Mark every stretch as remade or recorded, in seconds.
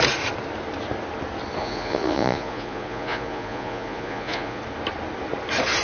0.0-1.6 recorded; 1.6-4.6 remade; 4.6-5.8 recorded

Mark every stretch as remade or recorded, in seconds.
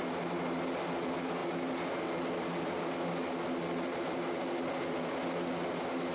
0.0-6.1 recorded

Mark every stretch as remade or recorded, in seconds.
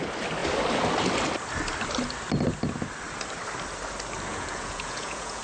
0.0-4.3 recorded; 4.3-5.4 remade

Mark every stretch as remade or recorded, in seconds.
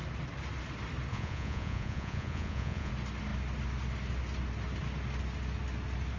0.0-1.1 recorded; 1.1-2.9 remade; 2.9-6.2 recorded